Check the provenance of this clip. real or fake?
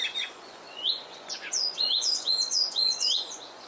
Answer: fake